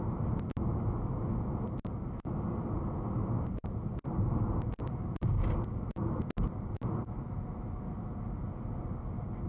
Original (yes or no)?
yes